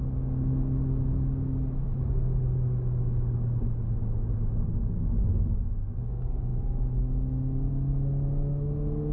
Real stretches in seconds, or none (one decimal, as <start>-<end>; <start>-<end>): 0.0-9.1